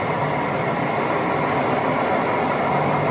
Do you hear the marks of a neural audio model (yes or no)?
no